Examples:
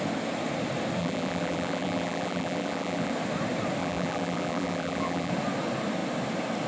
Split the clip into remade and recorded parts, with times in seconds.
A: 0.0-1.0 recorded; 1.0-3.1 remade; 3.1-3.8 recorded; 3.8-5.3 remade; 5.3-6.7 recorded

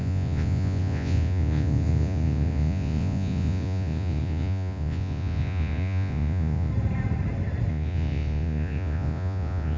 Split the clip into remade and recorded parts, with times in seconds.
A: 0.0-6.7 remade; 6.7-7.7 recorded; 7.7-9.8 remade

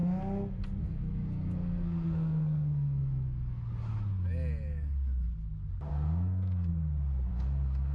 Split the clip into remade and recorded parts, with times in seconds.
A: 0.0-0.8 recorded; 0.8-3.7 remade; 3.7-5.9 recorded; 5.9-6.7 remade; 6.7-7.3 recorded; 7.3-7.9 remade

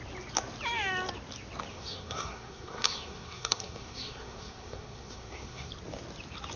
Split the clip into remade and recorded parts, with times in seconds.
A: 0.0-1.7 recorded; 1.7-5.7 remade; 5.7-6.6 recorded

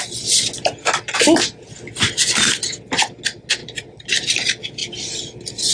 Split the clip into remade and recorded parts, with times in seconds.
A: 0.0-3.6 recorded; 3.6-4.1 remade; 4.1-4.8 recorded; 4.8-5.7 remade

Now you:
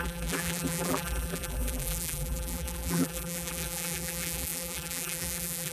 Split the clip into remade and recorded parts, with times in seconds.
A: 0.0-5.7 remade